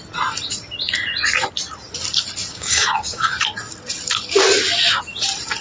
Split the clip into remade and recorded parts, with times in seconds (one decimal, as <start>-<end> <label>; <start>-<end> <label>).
0.0-2.5 recorded; 2.5-3.3 remade; 3.3-5.6 recorded